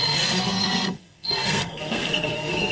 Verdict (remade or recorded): remade